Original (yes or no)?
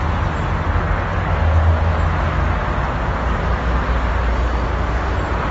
yes